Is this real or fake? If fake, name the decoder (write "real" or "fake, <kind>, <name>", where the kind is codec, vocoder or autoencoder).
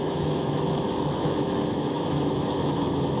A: fake, autoencoder, DAC-VAE